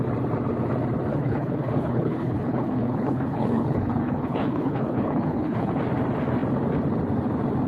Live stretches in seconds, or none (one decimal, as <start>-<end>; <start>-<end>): 0.0-1.1; 5.7-7.7